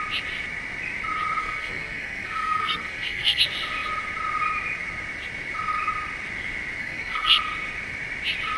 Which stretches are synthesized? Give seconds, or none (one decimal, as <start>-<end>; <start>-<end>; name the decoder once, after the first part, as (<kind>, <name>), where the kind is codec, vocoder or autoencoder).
1.4-3.4 (codec, SNAC); 6.8-7.4